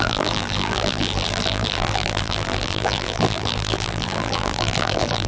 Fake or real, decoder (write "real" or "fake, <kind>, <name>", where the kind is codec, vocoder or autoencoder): fake, vocoder, BigVGAN v2